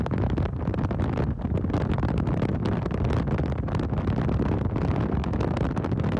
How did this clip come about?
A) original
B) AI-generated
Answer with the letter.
A